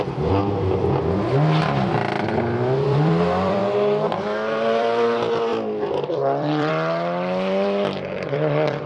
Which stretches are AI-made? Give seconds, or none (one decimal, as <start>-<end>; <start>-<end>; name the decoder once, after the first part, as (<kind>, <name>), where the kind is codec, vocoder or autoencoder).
0.0-0.4 (vocoder, BigVGAN v2); 1.9-3.6; 4.8-8.9

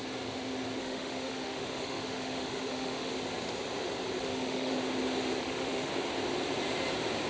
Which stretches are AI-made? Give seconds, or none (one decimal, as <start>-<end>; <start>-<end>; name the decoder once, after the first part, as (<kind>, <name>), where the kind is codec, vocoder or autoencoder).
0.8-3.1 (autoencoder, DAC-VAE); 4.2-4.7; 5.4-5.9

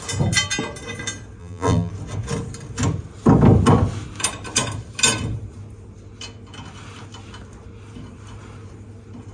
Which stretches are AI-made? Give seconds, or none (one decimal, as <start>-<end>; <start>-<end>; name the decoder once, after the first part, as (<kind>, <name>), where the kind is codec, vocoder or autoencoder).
1.4-1.9 (vocoder, BigVGAN v2)

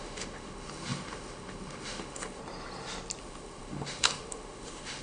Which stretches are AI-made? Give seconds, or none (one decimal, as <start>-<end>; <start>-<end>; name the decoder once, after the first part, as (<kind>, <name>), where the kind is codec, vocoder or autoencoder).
0.0-2.4 (autoencoder, DAC-VAE); 3.2-5.0

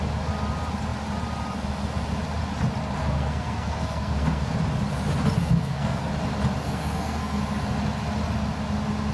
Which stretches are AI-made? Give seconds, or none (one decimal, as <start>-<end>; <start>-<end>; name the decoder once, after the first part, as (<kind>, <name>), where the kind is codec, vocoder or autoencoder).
3.0-4.5 (codec, SNAC); 5.4-6.1; 6.6-7.4

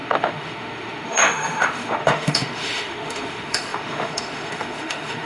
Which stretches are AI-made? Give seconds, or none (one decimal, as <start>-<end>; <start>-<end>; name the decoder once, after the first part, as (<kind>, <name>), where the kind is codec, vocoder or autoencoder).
0.0-5.3 (autoencoder, DAC-VAE)

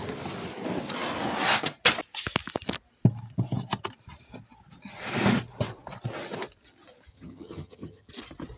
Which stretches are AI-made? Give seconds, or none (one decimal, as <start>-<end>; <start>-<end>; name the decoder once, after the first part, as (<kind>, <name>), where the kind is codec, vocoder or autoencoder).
7.1-8.1 (vocoder, HiFi-GAN)